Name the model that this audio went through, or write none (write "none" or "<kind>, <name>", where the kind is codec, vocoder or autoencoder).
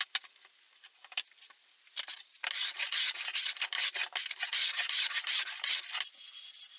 none